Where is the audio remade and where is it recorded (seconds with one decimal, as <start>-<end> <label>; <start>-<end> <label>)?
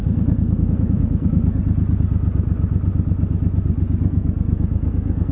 0.0-1.6 remade; 1.6-4.0 recorded; 4.0-5.3 remade